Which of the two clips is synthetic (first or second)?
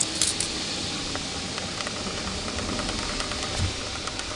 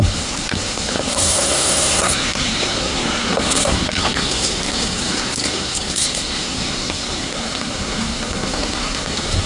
second